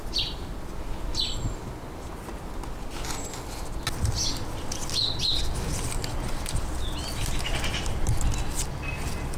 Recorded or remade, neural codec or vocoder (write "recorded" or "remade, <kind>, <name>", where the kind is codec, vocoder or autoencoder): recorded